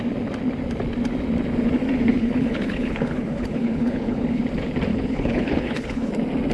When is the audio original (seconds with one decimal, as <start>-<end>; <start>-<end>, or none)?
0.0-2.1; 4.4-4.9; 6.1-6.5